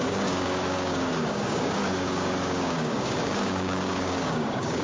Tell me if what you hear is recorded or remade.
remade